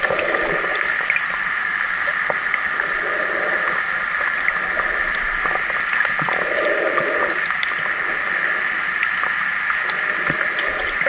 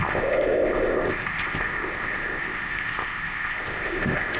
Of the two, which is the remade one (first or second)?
second